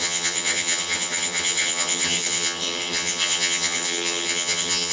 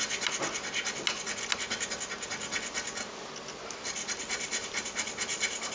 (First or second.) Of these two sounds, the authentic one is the second